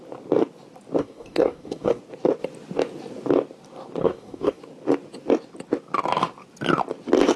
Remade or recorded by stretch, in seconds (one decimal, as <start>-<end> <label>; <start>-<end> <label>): 0.0-1.0 recorded; 1.0-2.0 remade; 2.0-4.0 recorded; 4.0-4.6 remade; 4.6-7.4 recorded